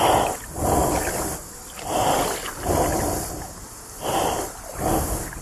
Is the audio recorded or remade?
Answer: recorded